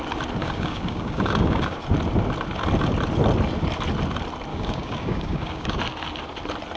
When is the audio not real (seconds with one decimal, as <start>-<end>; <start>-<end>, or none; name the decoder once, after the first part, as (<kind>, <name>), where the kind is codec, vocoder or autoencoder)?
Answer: 0.4-1.8 (codec, DAC); 4.5-5.8